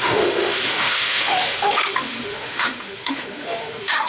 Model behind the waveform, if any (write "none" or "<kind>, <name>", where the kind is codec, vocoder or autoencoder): autoencoder, DAC-VAE